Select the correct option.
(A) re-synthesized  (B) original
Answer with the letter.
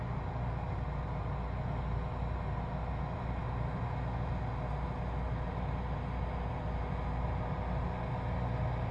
B